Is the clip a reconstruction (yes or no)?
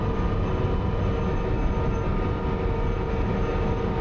no